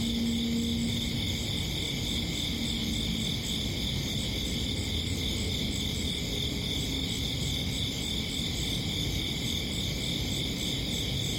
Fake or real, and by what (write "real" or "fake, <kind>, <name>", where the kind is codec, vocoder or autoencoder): real